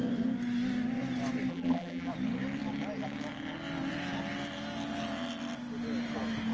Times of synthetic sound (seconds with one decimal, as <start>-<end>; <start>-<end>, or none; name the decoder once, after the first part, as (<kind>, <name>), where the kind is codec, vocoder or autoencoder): 1.5-2.1 (vocoder, BigVGAN v2)